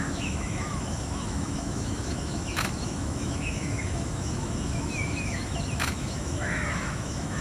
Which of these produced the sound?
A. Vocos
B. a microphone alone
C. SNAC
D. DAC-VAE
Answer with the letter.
D